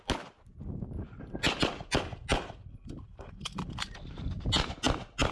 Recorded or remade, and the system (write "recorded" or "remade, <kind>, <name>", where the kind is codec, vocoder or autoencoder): recorded